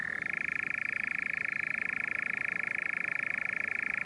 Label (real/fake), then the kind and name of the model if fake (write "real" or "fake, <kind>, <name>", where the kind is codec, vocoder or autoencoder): real